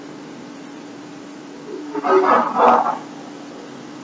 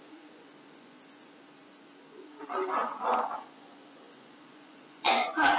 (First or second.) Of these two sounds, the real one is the first